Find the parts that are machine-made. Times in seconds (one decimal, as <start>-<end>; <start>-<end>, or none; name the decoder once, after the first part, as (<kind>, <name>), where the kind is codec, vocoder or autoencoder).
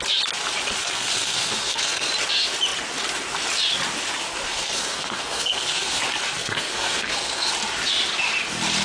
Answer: 0.8-2.1 (codec, SNAC); 4.5-6.0; 6.4-7.5